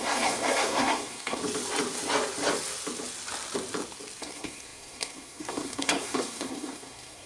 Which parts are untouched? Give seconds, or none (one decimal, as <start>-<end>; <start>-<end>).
1.4-4.2